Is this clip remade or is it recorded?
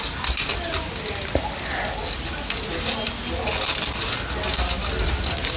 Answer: recorded